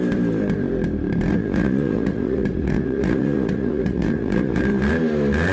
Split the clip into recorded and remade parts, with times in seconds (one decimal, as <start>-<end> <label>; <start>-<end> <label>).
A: 0.0-1.3 recorded; 1.3-4.6 remade; 4.6-5.5 recorded